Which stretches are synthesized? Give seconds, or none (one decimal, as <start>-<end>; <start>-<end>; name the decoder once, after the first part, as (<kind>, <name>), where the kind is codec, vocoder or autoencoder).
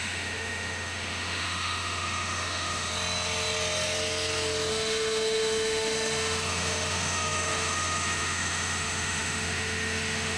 0.0-2.9 (autoencoder, DAC-VAE); 4.7-10.4